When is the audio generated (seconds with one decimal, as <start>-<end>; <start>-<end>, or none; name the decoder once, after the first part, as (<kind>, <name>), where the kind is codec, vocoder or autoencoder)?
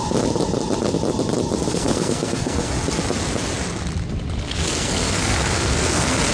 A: 1.7-2.7 (codec, SNAC); 4.5-6.3